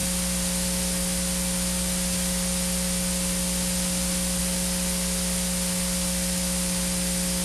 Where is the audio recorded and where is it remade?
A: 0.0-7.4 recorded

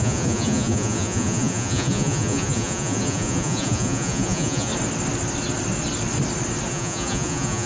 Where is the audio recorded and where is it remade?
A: 0.0-4.7 remade; 4.7-6.7 recorded; 6.7-7.7 remade

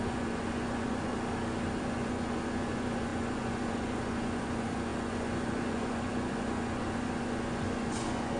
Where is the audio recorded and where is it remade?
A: 0.0-1.1 remade; 1.1-1.8 recorded; 1.8-8.4 remade